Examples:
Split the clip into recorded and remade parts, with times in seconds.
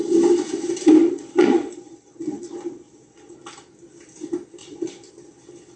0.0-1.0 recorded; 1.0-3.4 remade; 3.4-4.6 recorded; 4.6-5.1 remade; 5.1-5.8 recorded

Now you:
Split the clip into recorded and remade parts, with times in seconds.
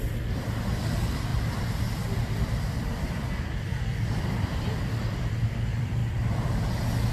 0.0-6.0 remade; 6.0-7.1 recorded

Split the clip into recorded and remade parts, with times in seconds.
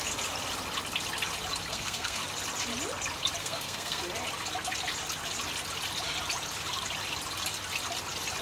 0.0-1.7 recorded; 1.7-2.2 remade; 2.2-3.4 recorded; 3.4-4.0 remade; 4.0-8.4 recorded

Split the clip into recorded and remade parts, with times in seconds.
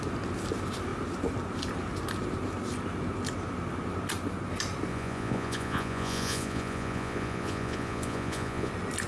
0.0-4.9 recorded; 4.9-8.7 remade; 8.7-9.1 recorded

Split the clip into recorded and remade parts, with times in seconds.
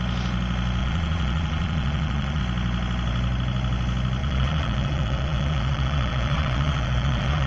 0.0-0.8 recorded; 0.8-2.4 remade; 2.4-4.2 recorded; 4.2-7.5 remade